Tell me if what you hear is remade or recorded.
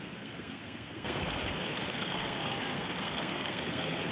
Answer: remade